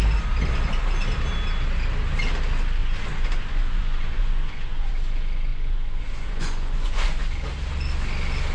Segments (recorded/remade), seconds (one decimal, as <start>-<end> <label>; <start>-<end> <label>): 0.0-2.8 recorded; 2.8-4.9 remade; 4.9-5.5 recorded; 5.5-7.2 remade; 7.2-8.5 recorded